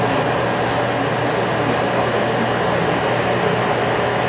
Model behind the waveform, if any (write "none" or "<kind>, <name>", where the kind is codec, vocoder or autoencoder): none